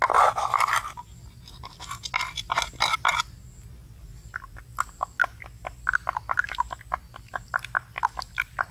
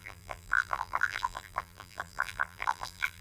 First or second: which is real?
first